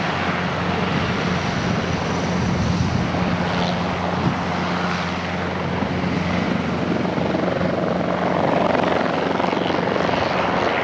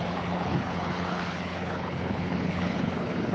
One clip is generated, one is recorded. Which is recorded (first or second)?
first